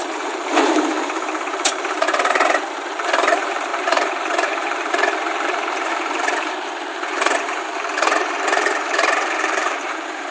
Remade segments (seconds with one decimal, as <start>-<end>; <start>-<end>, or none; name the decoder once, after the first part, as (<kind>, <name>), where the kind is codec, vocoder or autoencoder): 0.0-10.3 (vocoder, BigVGAN v2)